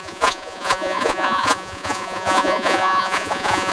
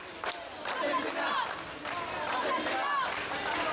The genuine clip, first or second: second